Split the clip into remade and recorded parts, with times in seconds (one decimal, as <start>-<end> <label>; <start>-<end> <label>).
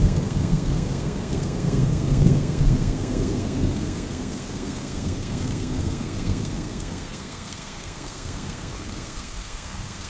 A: 0.0-10.1 remade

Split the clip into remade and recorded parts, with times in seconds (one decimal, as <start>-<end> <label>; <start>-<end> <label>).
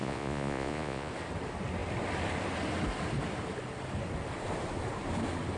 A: 0.0-1.1 remade; 1.1-5.6 recorded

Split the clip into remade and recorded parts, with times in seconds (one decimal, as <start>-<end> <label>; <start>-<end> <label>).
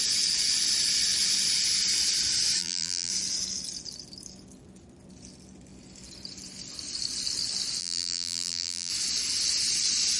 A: 0.0-2.6 recorded; 2.6-3.1 remade; 3.1-7.8 recorded; 7.8-8.9 remade; 8.9-10.2 recorded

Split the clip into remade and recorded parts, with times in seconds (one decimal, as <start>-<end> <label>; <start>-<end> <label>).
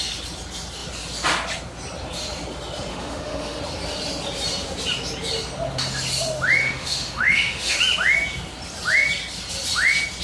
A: 0.0-2.9 recorded; 2.9-3.6 remade; 3.6-6.6 recorded; 6.6-7.8 remade; 7.8-10.2 recorded